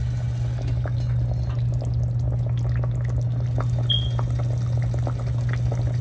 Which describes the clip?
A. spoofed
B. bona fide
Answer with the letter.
B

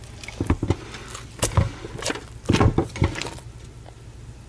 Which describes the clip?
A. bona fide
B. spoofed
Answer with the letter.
A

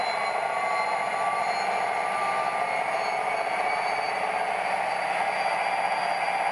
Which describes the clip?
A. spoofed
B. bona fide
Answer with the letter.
B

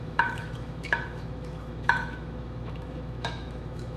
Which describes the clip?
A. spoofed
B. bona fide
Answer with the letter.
A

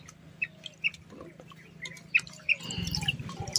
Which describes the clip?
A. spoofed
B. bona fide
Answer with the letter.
B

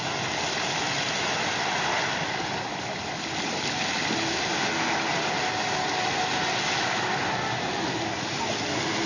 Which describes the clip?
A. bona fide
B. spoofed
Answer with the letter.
A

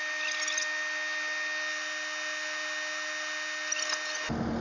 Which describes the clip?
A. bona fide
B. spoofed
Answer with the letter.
A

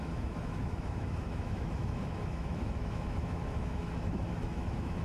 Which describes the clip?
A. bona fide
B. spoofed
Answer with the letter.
B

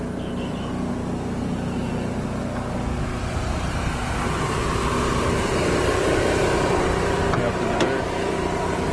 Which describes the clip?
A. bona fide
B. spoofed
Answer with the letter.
A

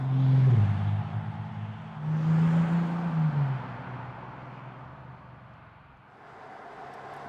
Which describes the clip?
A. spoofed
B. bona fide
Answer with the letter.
B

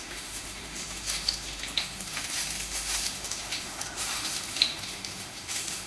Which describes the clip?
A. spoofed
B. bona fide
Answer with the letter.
A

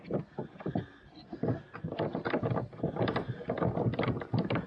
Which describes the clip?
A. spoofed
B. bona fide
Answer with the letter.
B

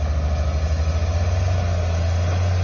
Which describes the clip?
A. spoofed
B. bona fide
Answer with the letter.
B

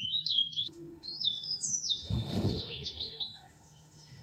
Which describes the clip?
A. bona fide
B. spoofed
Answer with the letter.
B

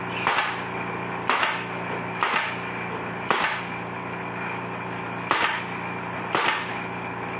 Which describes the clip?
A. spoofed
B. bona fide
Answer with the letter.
B